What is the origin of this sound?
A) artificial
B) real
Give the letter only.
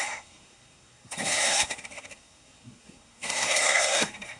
A